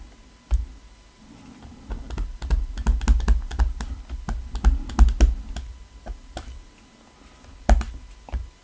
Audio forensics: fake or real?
real